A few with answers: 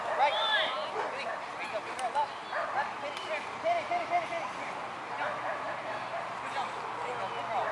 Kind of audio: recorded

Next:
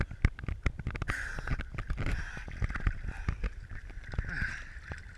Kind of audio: recorded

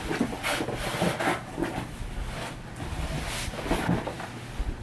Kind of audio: recorded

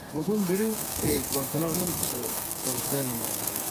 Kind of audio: remade